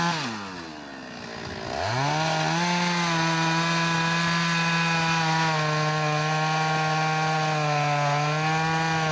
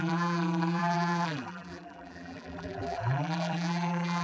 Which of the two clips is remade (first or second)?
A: second